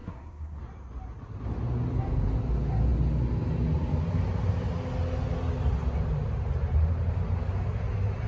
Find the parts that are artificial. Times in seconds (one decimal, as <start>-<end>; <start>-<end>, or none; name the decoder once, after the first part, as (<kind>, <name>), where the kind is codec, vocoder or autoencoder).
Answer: 0.0-0.6 (codec, SNAC)